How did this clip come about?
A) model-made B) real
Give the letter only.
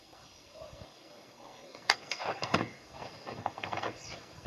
A